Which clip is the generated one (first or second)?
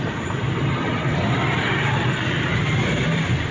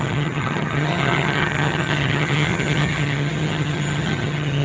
second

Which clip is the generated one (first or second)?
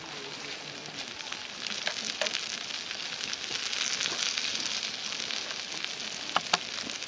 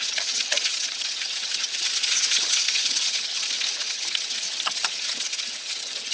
second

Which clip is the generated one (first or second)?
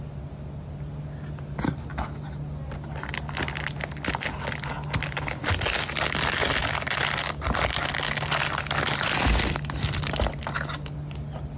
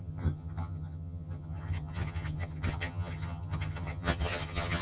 second